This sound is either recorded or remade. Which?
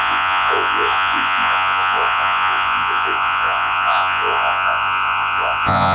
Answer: remade